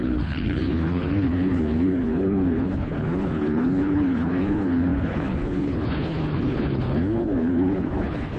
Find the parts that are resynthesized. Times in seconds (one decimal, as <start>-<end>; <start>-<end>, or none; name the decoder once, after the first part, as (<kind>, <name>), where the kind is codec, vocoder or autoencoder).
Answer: 0.0-8.4 (codec, HILCodec)